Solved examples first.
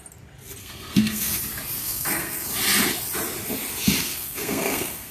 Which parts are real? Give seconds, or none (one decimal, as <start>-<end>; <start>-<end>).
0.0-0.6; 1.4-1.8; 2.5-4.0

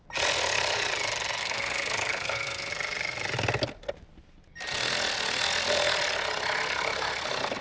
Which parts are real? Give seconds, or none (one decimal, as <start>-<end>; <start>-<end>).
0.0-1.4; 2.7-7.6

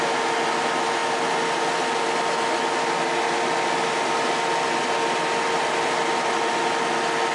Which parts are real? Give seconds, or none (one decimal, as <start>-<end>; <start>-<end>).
0.0-7.3

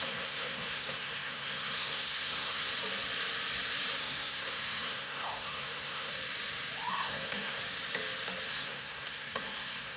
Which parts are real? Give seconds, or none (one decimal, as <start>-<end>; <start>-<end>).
2.7-4.0; 6.1-6.9; 7.6-8.5